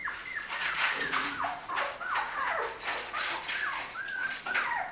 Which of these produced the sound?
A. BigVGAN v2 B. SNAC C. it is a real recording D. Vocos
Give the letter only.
D